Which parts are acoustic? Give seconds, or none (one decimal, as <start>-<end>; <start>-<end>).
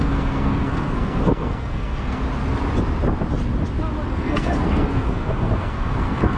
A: 2.2-4.1